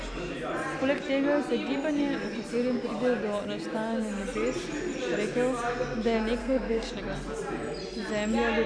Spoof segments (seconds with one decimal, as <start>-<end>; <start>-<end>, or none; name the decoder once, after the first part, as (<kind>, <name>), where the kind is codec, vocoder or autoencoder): 6.4-7.0 (codec, SNAC)